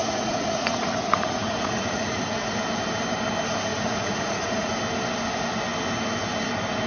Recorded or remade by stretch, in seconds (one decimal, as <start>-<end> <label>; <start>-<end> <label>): 0.0-2.5 remade; 2.5-3.7 recorded; 3.7-4.7 remade; 4.7-6.9 recorded